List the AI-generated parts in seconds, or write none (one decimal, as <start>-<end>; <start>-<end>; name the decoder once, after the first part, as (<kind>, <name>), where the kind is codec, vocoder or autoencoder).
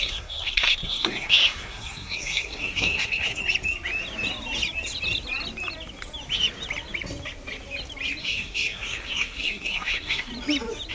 0.0-3.4 (codec, SNAC); 8.2-10.3